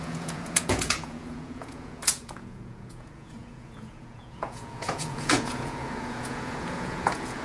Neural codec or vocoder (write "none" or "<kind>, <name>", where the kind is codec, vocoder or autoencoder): vocoder, Vocos